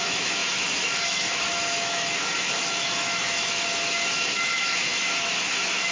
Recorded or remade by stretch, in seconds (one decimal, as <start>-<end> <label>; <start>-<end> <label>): 0.0-5.9 remade